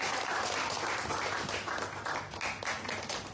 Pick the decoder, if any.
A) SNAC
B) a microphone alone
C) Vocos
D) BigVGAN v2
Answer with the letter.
B